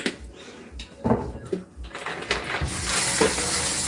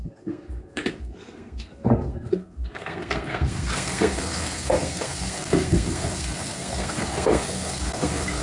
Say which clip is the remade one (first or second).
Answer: second